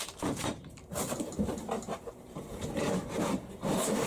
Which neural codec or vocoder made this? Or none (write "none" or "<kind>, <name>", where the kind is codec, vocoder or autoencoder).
vocoder, BigVGAN v2